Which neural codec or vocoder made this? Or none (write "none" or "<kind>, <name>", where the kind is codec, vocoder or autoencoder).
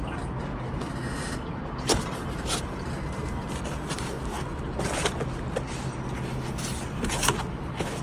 none